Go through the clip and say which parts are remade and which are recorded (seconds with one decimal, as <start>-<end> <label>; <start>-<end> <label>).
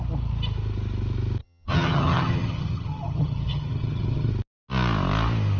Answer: 0.0-1.4 recorded; 1.4-4.3 remade; 4.3-5.6 recorded